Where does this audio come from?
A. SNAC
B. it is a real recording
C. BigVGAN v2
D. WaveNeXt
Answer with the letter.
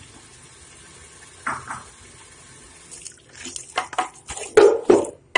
B